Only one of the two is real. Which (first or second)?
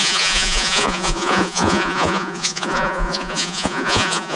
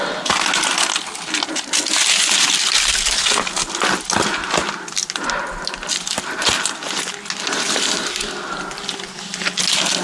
second